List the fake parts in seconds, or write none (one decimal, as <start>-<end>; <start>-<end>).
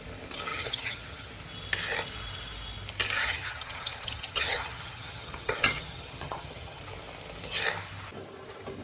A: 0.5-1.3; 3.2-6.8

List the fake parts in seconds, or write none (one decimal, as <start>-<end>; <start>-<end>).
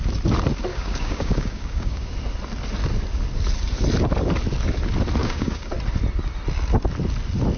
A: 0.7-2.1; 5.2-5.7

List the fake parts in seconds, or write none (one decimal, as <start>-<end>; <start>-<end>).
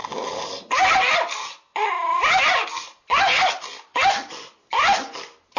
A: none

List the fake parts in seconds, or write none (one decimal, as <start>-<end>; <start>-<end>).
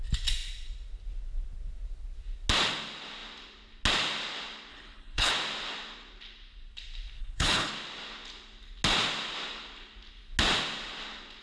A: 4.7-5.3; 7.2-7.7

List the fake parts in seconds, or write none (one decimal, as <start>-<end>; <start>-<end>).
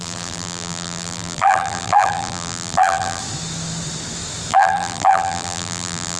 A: 0.0-3.2; 4.5-6.2